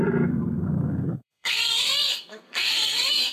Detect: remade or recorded remade